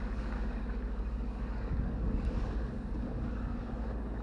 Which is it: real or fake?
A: fake